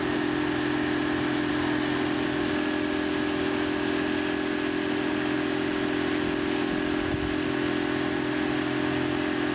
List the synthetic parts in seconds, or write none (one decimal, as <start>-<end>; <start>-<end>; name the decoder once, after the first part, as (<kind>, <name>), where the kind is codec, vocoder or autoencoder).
none